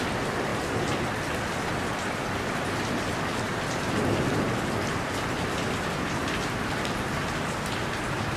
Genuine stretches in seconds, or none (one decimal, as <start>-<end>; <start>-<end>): 0.0-8.4